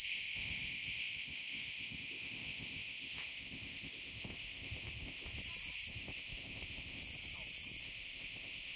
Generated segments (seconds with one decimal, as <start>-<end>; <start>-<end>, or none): 0.0-5.4; 5.9-7.0; 7.8-8.8